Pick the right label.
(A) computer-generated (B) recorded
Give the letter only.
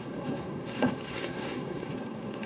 A